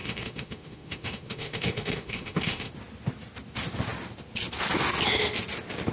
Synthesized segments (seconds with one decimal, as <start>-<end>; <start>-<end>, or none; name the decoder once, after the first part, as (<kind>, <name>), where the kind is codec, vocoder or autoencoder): 0.0-2.7 (autoencoder, DAC-VAE)

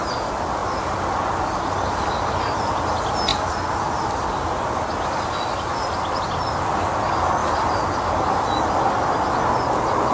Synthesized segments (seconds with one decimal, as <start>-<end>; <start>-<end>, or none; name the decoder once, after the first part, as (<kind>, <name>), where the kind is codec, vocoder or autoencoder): none

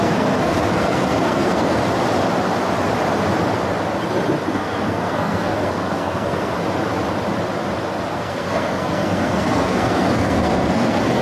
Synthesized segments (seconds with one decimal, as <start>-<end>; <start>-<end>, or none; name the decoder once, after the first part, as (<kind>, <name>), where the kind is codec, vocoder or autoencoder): 0.0-1.8 (codec, SNAC); 4.5-6.5; 8.1-11.2

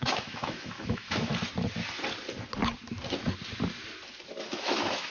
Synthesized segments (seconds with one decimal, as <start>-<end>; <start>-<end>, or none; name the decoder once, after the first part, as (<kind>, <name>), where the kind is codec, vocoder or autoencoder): 0.0-1.3 (autoencoder, DAC-VAE); 4.4-5.1